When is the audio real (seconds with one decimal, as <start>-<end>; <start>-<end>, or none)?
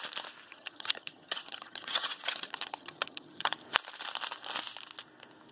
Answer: 0.0-0.4; 3.5-5.5